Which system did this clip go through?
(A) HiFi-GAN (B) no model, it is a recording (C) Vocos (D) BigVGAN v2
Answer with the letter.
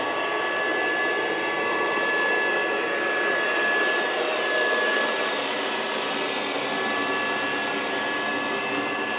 B